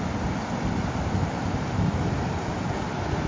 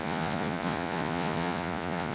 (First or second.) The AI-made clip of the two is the second